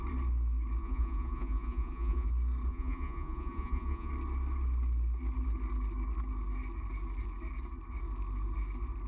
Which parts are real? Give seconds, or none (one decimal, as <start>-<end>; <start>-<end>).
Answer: 0.0-0.8; 2.3-2.7; 4.1-9.1